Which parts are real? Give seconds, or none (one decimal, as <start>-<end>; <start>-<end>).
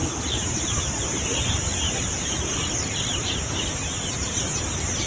0.6-5.1